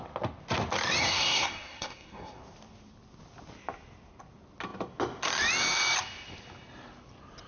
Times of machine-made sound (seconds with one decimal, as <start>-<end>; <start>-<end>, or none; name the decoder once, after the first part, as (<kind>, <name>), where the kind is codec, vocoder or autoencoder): 1.0-2.4 (codec, SNAC)